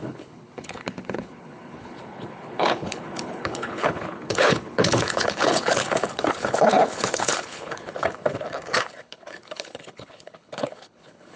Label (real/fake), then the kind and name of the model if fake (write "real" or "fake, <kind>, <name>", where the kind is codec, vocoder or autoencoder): fake, codec, HILCodec